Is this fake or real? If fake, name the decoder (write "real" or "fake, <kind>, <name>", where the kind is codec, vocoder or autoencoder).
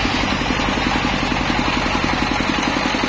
real